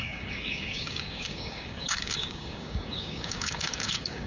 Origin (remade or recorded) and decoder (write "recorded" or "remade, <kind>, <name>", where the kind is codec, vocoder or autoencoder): remade, codec, DAC